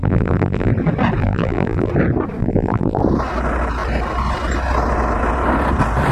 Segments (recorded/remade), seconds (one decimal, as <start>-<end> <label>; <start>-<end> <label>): 0.0-0.7 remade; 0.7-1.2 recorded; 1.2-1.9 remade; 1.9-2.4 recorded; 2.4-3.0 remade; 3.0-6.1 recorded